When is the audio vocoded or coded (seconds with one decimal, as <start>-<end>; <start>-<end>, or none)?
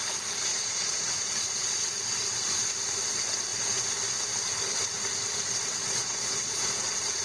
0.5-1.6; 5.8-6.6